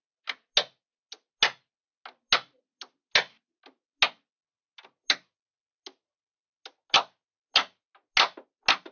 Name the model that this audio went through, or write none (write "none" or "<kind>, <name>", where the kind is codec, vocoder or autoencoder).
none